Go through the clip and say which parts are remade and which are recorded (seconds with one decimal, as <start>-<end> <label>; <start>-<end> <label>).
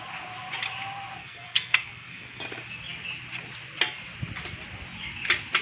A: 0.0-1.2 recorded; 1.2-2.4 remade; 2.4-5.6 recorded